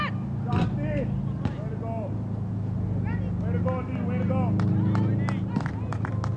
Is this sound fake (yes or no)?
no